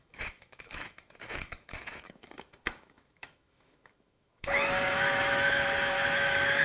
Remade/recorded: remade